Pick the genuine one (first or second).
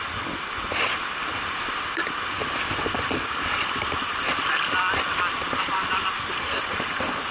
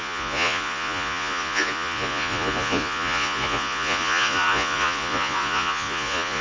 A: first